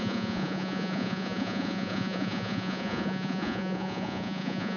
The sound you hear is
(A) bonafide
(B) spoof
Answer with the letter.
B